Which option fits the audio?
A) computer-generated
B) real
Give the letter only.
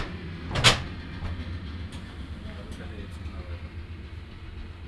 B